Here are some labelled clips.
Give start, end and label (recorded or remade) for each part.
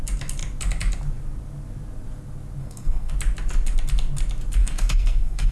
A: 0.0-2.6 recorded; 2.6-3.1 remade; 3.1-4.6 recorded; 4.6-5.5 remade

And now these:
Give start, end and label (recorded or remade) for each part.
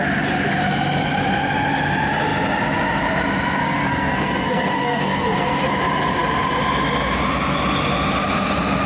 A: 0.0-3.6 recorded; 3.6-5.6 remade; 5.6-8.9 recorded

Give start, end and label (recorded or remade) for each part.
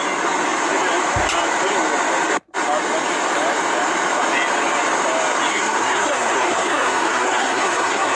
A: 0.0-5.5 recorded; 5.5-8.2 remade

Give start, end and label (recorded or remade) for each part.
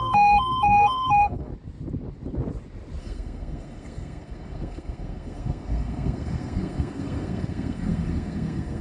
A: 0.0-1.5 remade; 1.5-3.0 recorded; 3.0-8.8 remade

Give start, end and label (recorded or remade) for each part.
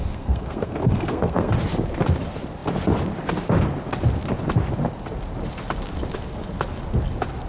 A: 0.0-1.5 remade; 1.5-7.5 recorded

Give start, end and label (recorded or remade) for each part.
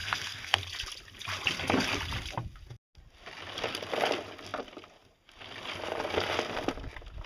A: 0.0-0.6 remade; 0.6-7.3 recorded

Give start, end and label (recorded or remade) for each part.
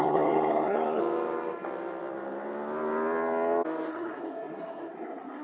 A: 0.0-1.0 remade; 1.0-3.9 recorded; 3.9-5.4 remade